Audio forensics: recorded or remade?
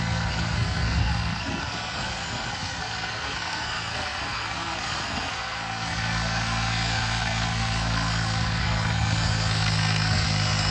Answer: remade